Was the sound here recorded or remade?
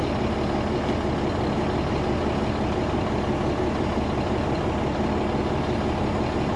recorded